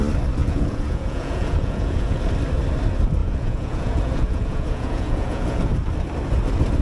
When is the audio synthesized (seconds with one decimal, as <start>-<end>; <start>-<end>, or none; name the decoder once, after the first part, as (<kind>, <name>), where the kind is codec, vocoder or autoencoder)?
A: 0.4-2.2 (vocoder, Vocos); 3.2-5.7